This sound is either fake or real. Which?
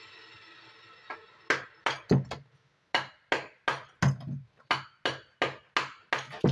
real